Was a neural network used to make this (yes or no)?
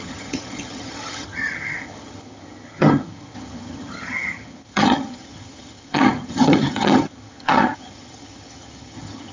yes